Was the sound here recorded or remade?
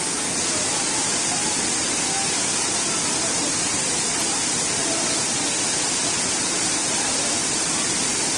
recorded